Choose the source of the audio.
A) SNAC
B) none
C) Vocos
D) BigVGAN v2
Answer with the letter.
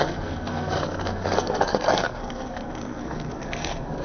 A